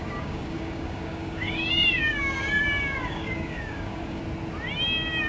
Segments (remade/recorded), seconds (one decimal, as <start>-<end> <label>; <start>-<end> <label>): 0.0-4.2 remade; 4.2-5.3 recorded